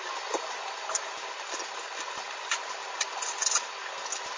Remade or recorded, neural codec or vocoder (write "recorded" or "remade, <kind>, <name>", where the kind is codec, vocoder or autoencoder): remade, vocoder, BigVGAN v2